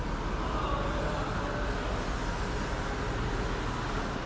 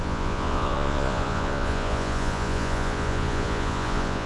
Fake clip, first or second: second